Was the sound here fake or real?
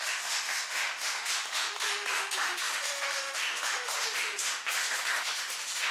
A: fake